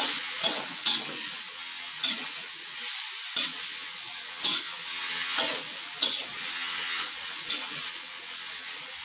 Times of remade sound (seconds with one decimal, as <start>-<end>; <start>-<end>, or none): 0.0-2.8; 3.4-9.0